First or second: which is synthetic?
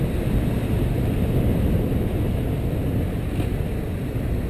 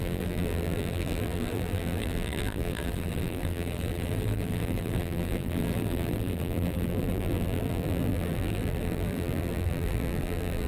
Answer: second